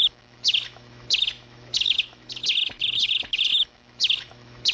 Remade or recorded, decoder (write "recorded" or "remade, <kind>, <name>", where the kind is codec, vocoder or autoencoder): remade, autoencoder, DAC-VAE